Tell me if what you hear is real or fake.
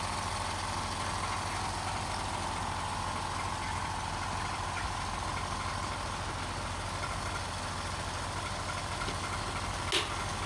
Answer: real